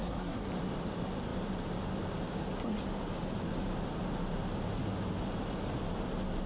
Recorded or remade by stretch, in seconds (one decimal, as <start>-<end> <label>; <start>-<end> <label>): 0.0-0.5 remade; 0.5-6.5 recorded